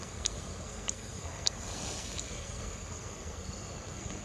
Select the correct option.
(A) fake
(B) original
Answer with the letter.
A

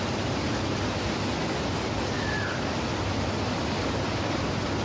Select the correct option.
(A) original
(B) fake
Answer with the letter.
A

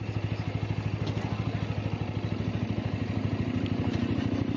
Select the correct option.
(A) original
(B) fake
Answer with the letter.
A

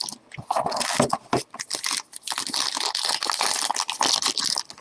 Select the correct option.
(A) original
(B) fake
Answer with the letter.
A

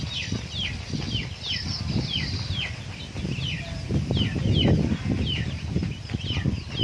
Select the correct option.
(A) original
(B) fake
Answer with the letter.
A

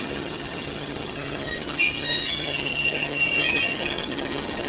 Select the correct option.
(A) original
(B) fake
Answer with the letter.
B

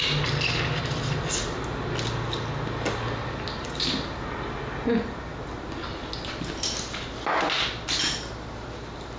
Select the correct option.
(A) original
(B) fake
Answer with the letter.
A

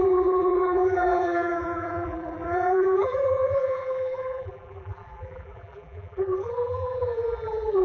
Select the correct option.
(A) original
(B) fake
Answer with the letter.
B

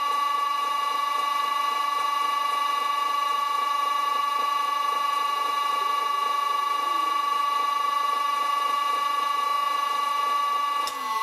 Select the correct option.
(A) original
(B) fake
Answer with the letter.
A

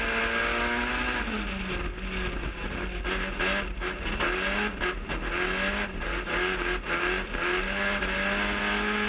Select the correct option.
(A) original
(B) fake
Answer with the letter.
A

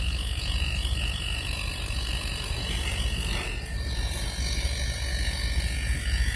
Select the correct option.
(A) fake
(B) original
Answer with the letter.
A